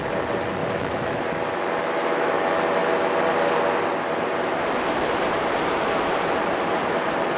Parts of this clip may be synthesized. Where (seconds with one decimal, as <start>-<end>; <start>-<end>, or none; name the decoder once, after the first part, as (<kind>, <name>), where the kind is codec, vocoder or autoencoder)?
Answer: 0.6-1.2 (autoencoder, DAC-VAE); 1.8-2.3